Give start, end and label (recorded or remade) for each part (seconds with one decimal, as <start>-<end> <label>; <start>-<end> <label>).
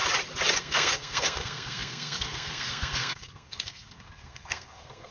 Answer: 0.0-0.6 recorded; 0.6-5.1 remade